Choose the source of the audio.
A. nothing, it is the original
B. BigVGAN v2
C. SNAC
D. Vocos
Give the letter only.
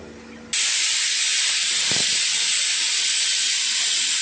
A